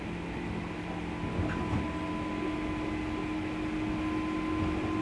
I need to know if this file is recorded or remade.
recorded